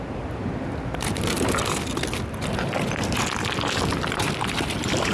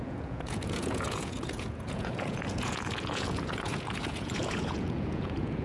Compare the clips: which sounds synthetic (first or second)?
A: second